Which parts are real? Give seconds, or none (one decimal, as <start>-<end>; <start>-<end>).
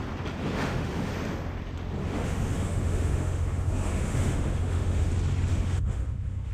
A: 0.0-0.4; 1.1-2.0; 5.1-5.5